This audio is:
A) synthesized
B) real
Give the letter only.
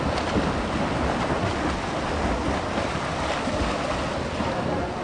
B